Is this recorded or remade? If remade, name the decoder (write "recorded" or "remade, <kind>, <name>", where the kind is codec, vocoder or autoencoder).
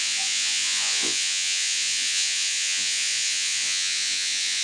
remade, vocoder, Vocos